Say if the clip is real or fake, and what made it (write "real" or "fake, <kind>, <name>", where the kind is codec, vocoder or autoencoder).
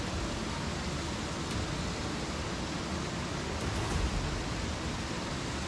real